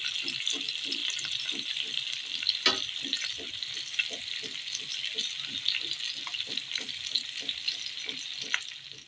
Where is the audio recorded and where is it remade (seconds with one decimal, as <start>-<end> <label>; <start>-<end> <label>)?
0.0-9.1 recorded